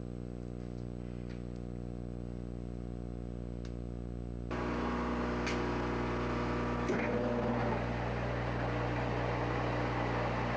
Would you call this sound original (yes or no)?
yes